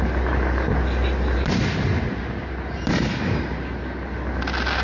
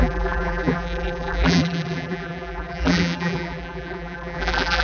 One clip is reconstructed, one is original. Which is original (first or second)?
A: first